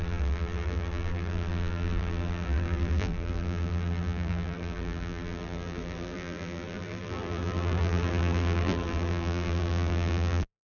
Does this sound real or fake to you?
fake